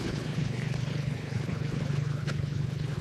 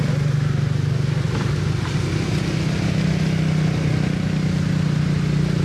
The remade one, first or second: first